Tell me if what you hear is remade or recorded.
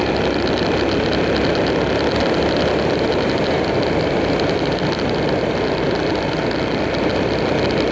recorded